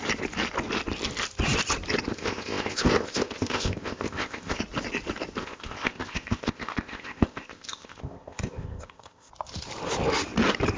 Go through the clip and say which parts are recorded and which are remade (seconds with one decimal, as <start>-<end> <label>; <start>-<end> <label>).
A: 0.0-2.1 recorded; 2.1-4.6 remade; 4.6-5.4 recorded; 5.4-9.3 remade; 9.3-10.8 recorded